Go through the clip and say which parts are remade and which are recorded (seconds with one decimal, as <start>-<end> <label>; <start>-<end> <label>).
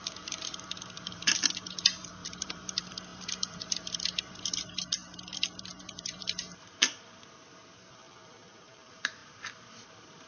0.0-10.3 remade